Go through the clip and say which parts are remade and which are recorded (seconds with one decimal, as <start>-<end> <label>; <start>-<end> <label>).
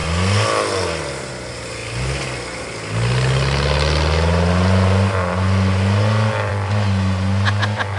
0.0-8.0 recorded